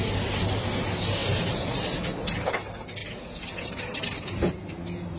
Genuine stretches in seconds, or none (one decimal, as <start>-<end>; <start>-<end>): 0.0-1.2; 1.8-5.2